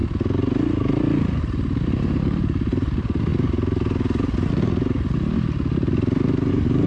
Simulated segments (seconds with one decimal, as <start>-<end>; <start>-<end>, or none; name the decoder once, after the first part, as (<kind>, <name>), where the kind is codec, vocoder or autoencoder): 1.4-3.3 (vocoder, BigVGAN v2); 6.5-6.9